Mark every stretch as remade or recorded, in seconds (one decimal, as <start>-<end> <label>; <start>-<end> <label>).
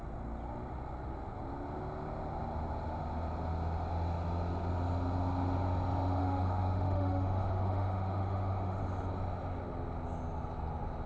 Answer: 0.0-6.2 recorded; 6.2-8.8 remade; 8.8-11.1 recorded